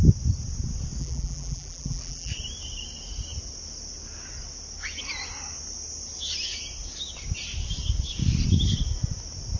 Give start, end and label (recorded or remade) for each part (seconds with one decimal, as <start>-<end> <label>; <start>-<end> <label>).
0.0-1.0 recorded; 1.0-2.3 remade; 2.3-9.6 recorded